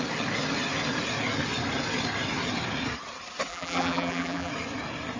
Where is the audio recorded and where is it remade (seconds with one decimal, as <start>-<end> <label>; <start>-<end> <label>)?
0.0-3.5 recorded; 3.5-4.5 remade; 4.5-5.2 recorded